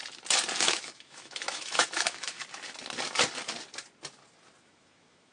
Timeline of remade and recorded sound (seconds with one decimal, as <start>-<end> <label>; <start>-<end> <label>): 0.0-0.6 recorded; 0.6-2.4 remade; 2.4-4.6 recorded; 4.6-5.3 remade

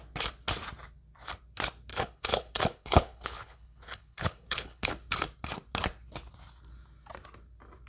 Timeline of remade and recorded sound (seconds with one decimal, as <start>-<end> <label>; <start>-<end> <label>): 0.0-1.9 recorded; 1.9-4.9 remade; 4.9-7.9 recorded

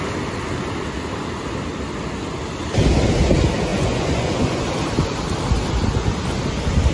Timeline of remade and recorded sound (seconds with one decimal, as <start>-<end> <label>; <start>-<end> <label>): 0.0-3.7 recorded; 3.7-4.6 remade; 4.6-6.9 recorded

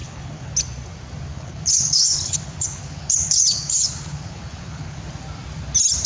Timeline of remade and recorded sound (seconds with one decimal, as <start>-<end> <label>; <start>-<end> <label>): 0.0-0.5 remade; 0.5-1.3 recorded; 1.3-5.0 remade; 5.0-6.1 recorded